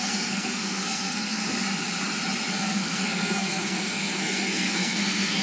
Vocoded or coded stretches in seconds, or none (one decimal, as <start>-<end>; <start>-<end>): 0.0-1.4; 2.5-5.4